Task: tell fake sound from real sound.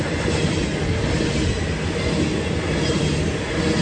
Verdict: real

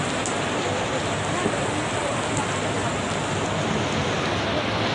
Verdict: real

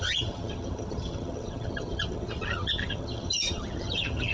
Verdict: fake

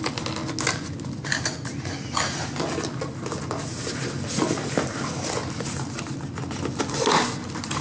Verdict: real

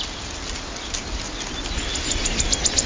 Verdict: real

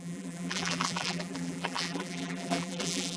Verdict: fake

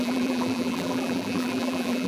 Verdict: fake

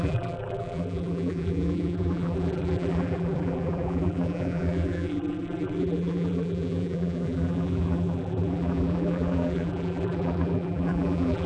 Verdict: fake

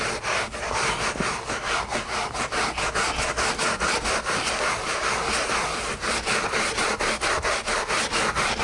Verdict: real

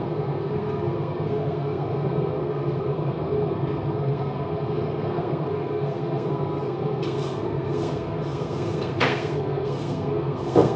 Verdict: fake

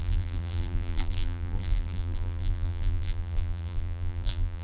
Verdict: fake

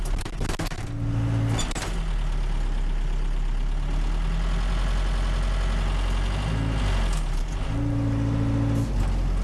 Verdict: real